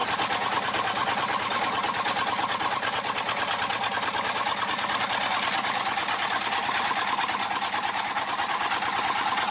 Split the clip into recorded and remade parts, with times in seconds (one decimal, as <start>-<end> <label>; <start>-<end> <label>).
0.0-9.5 recorded